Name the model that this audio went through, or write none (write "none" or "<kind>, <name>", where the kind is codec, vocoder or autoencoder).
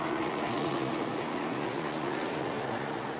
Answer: vocoder, Vocos